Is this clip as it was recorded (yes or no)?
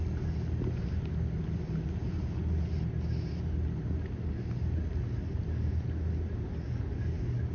yes